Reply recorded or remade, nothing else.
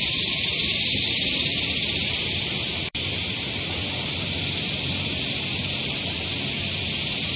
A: remade